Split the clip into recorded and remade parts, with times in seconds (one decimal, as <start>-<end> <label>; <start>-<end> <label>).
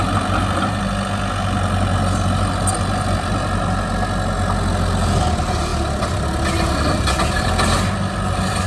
0.0-8.7 recorded